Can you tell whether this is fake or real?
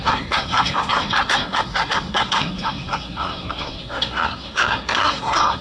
fake